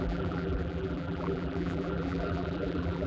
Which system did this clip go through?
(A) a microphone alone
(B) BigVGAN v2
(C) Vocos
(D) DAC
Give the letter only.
B